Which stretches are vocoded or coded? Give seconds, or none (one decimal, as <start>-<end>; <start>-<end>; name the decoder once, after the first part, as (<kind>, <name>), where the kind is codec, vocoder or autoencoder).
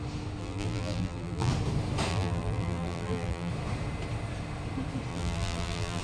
0.4-1.5 (vocoder, BigVGAN v2); 2.1-3.5; 5.1-6.0